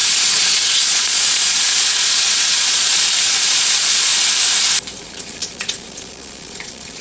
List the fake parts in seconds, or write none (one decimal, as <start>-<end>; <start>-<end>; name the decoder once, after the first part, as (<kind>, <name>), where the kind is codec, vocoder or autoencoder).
0.0-4.1 (vocoder, Vocos); 5.0-7.0